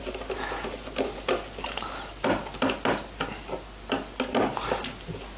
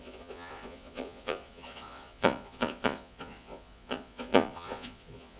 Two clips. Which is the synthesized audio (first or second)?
second